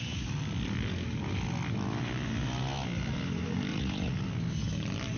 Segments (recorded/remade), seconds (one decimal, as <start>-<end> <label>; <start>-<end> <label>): 0.0-3.7 recorded; 3.7-4.2 remade; 4.2-5.2 recorded